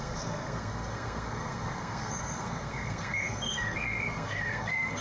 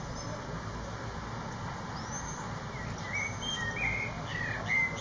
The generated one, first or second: first